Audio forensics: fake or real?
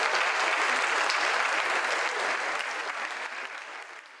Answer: real